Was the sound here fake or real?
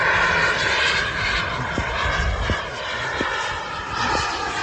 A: real